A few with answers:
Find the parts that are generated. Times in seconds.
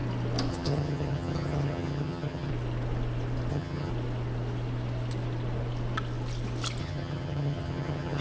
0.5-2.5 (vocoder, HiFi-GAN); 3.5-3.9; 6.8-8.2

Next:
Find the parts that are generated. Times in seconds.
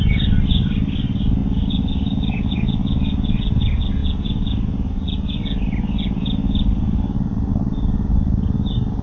none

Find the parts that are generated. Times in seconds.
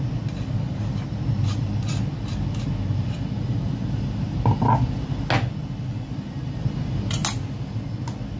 none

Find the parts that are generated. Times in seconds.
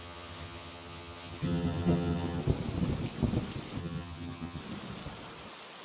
0.0-2.4 (vocoder, HiFi-GAN); 3.8-4.6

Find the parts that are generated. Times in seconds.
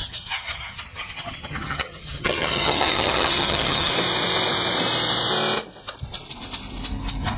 0.0-3.9 (vocoder, HiFi-GAN)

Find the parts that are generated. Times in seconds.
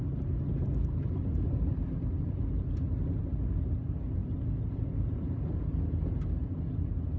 none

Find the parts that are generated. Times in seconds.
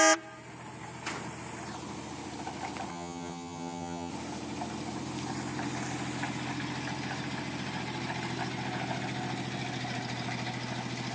2.9-4.1 (vocoder, HiFi-GAN)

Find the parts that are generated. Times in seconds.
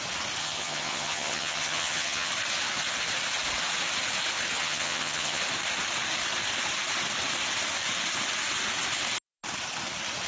0.4-2.3 (vocoder, HiFi-GAN); 4.6-5.4